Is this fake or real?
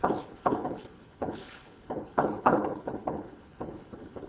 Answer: fake